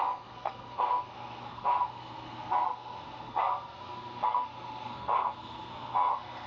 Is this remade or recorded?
remade